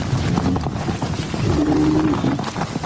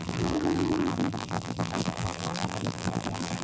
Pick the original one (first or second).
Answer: first